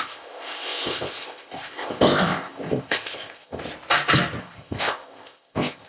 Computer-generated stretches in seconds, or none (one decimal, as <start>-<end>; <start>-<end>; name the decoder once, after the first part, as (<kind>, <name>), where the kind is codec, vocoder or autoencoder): 0.0-3.6 (codec, ZipCodec); 4.4-5.9